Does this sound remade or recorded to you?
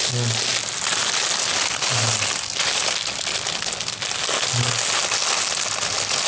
recorded